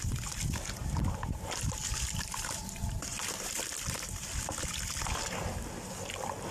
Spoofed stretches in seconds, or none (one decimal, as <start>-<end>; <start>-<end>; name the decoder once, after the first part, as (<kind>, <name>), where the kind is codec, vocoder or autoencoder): none